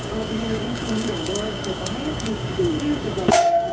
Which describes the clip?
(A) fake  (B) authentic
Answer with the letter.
A